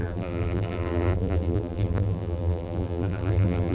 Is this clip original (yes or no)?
no